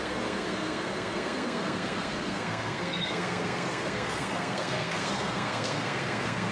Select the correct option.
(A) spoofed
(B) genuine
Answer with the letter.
A